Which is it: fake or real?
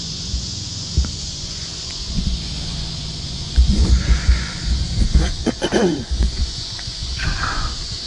fake